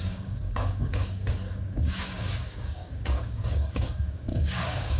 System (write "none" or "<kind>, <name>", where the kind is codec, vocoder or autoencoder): codec, DAC